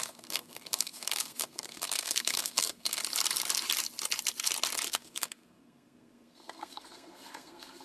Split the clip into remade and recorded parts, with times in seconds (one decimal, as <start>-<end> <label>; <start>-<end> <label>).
0.0-3.0 remade; 3.0-4.9 recorded; 4.9-7.8 remade